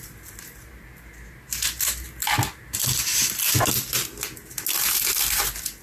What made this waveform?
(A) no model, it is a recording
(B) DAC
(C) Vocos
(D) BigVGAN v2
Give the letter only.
A